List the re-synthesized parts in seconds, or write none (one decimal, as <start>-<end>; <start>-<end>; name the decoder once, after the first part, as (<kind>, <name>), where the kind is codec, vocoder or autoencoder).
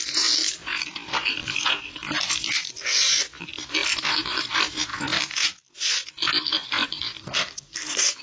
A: 7.2-8.2 (codec, SNAC)